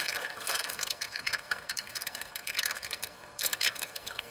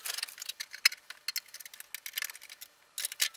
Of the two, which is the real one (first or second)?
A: second